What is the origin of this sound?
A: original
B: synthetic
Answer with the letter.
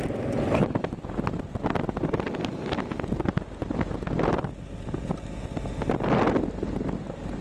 A